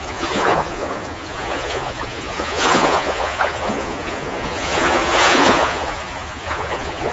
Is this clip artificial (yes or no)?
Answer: yes